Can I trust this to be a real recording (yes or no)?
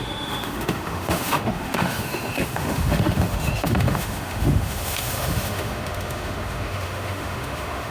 no